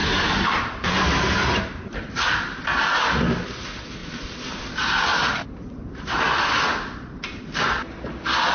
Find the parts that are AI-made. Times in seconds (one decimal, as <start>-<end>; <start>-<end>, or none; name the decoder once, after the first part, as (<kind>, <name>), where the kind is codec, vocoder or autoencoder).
0.0-2.6 (vocoder, BigVGAN v2); 4.0-4.6; 5.1-6.0

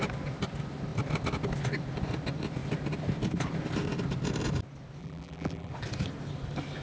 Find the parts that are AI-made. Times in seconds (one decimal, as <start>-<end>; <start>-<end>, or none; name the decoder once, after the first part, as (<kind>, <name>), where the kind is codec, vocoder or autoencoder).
5.0-5.7 (vocoder, BigVGAN v2)

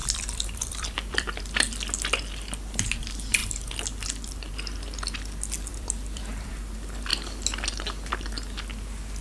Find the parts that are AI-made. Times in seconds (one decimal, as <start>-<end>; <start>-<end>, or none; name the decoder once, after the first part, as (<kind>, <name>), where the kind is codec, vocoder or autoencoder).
0.0-1.4 (vocoder, BigVGAN v2); 5.7-6.5

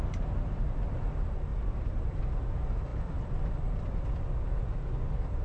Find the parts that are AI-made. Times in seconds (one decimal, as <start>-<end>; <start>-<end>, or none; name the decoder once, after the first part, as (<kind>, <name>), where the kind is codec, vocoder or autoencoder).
1.5-2.2 (vocoder, BigVGAN v2); 2.9-4.2

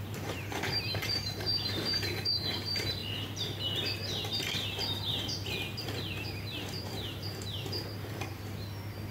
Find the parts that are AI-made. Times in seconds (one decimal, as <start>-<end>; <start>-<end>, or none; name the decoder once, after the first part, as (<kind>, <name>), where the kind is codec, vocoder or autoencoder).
0.0-3.0 (vocoder, BigVGAN v2); 5.8-9.1

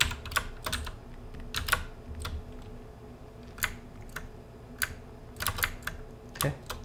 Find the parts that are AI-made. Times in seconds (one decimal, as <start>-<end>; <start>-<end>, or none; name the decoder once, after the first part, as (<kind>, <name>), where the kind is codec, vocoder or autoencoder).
none

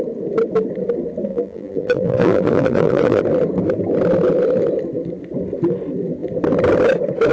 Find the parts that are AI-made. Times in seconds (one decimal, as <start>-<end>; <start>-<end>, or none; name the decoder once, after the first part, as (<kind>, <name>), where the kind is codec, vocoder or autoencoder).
1.3-3.2 (vocoder, BigVGAN v2)